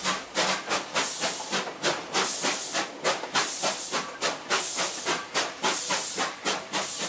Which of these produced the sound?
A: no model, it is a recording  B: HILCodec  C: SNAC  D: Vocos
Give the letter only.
A